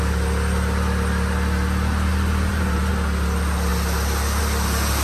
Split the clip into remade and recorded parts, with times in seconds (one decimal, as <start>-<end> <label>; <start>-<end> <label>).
0.0-2.1 recorded; 2.1-2.9 remade; 2.9-5.0 recorded